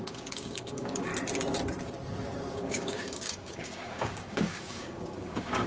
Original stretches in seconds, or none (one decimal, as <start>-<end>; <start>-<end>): 1.1-2.5